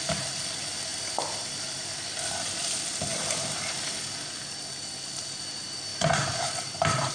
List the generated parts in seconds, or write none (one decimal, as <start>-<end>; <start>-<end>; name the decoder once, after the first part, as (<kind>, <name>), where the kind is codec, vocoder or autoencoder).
0.9-2.3 (vocoder, BigVGAN v2); 5.9-7.1